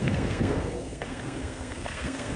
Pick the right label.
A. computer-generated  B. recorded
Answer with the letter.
A